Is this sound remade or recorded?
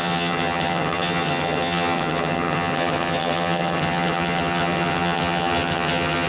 remade